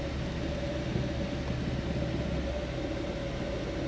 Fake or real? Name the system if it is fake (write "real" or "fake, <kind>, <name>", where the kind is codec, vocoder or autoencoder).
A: real